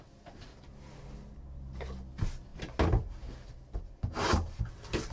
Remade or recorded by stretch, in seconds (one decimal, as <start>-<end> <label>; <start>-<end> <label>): 0.0-5.1 recorded